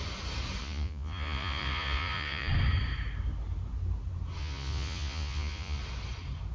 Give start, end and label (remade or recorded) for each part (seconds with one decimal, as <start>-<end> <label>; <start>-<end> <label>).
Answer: 0.0-0.6 recorded; 0.6-2.5 remade; 2.5-4.4 recorded; 4.4-5.8 remade; 5.8-6.5 recorded